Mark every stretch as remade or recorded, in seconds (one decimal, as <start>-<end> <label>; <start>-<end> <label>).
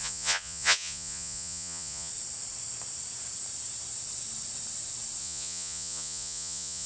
0.0-2.1 remade; 2.1-5.2 recorded; 5.2-6.9 remade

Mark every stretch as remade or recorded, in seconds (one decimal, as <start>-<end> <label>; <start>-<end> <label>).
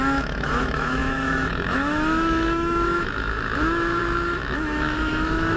0.0-5.6 remade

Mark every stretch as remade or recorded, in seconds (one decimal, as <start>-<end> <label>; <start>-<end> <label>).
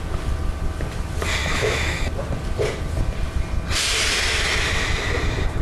0.0-1.4 recorded; 1.4-2.0 remade; 2.0-5.6 recorded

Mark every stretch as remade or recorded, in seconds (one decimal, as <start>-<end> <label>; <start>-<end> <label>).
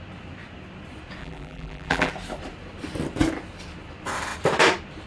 0.0-1.2 recorded; 1.2-2.1 remade; 2.1-5.1 recorded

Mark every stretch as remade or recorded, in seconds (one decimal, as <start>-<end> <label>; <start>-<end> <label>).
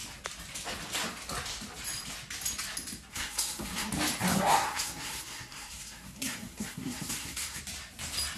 0.0-3.1 recorded; 3.1-3.9 remade; 3.9-4.3 recorded; 4.3-7.6 remade; 7.6-8.4 recorded